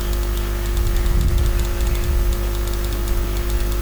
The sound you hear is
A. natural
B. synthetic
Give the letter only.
A